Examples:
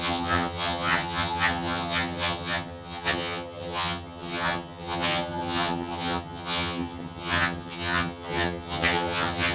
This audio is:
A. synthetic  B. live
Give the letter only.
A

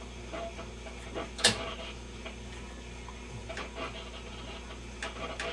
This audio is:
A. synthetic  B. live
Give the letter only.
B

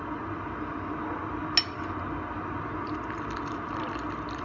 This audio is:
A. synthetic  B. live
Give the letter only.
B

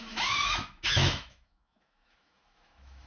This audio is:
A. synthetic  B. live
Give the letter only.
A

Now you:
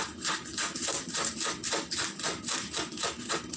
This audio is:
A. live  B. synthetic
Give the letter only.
A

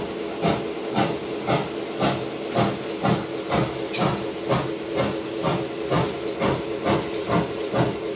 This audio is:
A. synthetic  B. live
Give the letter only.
B